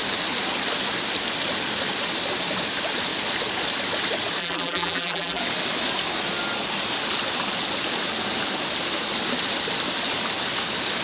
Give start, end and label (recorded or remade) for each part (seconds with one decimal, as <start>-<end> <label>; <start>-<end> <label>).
0.0-4.4 recorded; 4.4-5.4 remade; 5.4-11.0 recorded